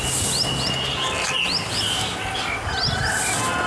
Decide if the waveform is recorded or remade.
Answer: recorded